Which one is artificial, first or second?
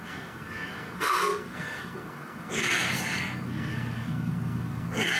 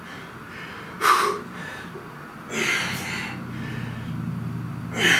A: first